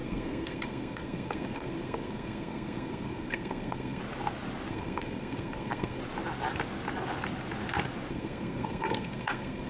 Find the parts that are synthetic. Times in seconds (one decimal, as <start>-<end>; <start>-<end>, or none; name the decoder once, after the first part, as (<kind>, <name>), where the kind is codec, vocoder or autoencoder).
0.0-4.0 (codec, SNAC); 4.7-6.0; 8.1-9.7